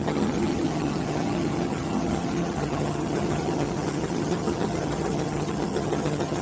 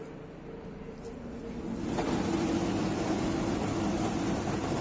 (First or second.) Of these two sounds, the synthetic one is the first